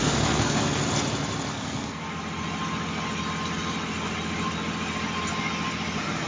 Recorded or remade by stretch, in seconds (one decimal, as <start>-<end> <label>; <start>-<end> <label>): 0.0-0.8 remade; 0.8-1.5 recorded; 1.5-2.0 remade; 2.0-6.3 recorded